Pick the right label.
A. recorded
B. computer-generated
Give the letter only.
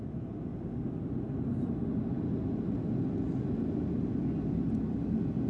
A